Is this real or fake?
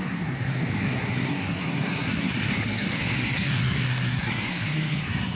fake